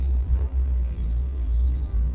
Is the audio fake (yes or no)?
yes